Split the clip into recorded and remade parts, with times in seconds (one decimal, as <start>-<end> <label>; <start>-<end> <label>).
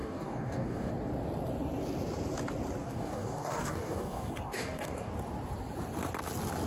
0.0-0.9 remade; 0.9-2.8 recorded; 2.8-5.1 remade; 5.1-6.7 recorded